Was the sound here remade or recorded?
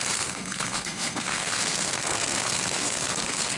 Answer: remade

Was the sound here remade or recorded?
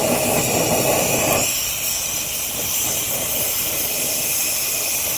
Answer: recorded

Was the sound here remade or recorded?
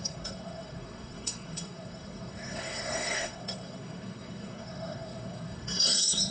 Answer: remade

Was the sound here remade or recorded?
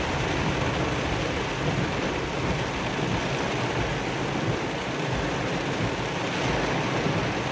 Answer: recorded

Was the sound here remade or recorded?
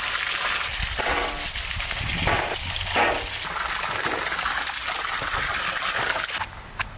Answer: recorded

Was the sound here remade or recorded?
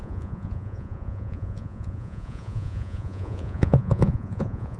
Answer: remade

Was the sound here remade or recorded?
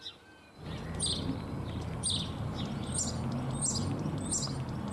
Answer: recorded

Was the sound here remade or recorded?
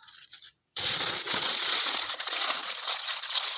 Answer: remade